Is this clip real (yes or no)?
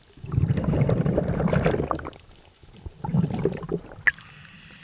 yes